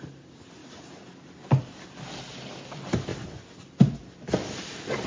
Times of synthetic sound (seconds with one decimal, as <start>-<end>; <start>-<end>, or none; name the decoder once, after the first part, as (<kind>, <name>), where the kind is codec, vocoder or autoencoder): 0.0-0.6 (vocoder, BigVGAN v2); 1.6-5.1